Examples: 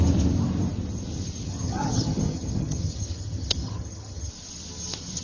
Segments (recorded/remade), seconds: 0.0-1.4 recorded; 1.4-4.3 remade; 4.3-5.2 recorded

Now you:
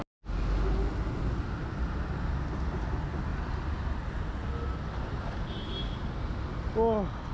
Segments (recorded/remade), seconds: 0.0-7.3 recorded

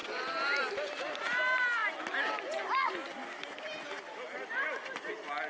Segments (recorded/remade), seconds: 0.0-5.5 recorded

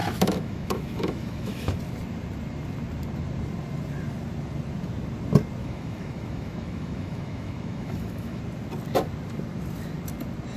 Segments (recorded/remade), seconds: 0.0-1.8 remade; 1.8-5.6 recorded; 5.6-8.4 remade; 8.4-10.6 recorded

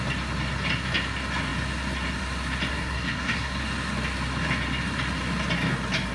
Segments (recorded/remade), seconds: 0.0-2.7 recorded; 2.7-3.6 remade; 3.6-6.1 recorded